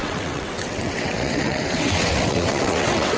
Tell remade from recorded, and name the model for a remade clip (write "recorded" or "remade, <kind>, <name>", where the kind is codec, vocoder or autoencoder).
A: remade, vocoder, WaveNeXt